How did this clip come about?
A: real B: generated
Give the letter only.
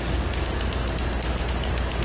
A